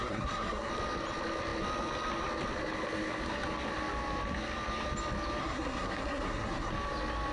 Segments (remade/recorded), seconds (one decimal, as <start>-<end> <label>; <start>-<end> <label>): 0.0-0.7 remade; 0.7-5.4 recorded; 5.4-6.7 remade; 6.7-7.3 recorded